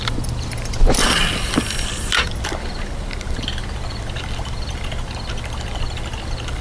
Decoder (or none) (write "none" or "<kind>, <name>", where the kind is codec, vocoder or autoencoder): vocoder, BigVGAN v2